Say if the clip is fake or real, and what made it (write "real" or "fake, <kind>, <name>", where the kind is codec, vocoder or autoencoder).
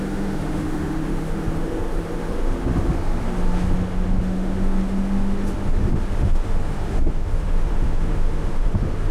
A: fake, autoencoder, DAC-VAE